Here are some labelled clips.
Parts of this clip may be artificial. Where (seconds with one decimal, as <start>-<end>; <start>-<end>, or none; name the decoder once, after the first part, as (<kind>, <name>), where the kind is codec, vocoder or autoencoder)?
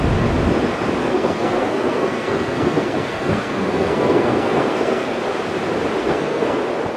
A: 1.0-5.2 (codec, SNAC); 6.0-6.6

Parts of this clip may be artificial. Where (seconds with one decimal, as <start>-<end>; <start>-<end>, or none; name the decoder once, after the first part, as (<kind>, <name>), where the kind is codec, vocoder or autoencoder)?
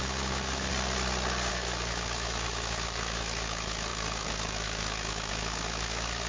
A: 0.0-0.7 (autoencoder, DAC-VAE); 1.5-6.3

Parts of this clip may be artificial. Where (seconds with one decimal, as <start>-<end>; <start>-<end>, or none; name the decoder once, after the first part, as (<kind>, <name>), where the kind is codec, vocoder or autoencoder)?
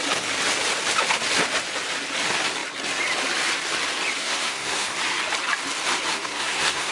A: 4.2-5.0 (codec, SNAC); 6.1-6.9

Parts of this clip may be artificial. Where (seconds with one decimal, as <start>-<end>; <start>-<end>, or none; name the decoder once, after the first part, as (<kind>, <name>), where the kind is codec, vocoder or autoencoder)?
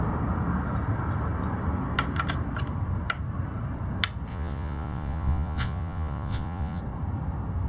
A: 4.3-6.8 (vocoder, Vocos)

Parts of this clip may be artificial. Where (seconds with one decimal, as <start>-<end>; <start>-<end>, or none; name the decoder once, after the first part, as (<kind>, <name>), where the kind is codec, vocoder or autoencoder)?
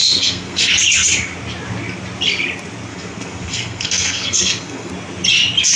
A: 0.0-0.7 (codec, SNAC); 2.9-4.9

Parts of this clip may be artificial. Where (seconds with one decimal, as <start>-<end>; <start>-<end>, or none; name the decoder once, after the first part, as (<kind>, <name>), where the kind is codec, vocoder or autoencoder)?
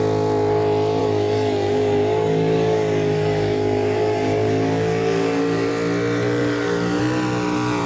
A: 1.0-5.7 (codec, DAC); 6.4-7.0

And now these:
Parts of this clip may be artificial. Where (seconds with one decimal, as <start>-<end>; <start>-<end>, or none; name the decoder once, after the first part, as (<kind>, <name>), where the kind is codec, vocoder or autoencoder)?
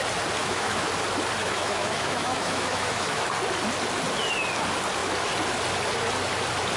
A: 0.4-0.9 (autoencoder, DAC-VAE); 1.4-3.2